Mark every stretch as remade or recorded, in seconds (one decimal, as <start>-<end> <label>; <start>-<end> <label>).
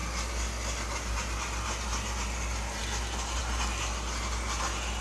0.0-5.0 recorded